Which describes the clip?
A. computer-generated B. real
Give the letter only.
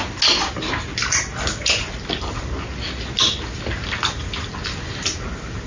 B